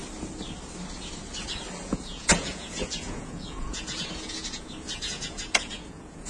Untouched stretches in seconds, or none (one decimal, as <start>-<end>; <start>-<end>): 0.0-1.8